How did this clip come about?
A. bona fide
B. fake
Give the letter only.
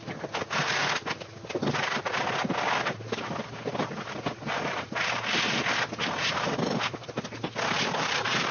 A